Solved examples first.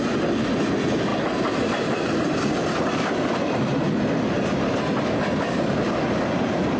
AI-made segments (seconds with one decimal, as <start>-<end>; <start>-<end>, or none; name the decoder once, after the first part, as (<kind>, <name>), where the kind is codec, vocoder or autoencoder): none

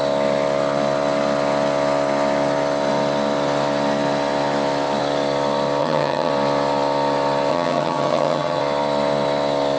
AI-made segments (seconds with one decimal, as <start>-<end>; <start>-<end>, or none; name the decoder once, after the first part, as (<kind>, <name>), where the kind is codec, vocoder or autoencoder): 5.8-6.3 (vocoder, HiFi-GAN); 7.5-8.6

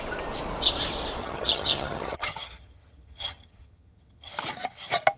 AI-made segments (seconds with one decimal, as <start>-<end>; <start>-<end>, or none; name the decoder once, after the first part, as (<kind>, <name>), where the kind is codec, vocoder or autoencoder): 1.2-4.3 (vocoder, HiFi-GAN)

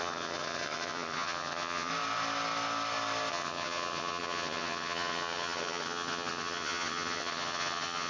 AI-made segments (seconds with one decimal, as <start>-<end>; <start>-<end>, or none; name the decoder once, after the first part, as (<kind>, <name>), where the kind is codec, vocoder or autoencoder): 0.0-1.9 (vocoder, HiFi-GAN); 3.3-8.1